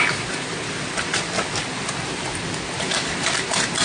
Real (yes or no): yes